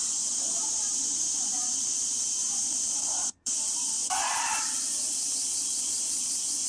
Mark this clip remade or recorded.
remade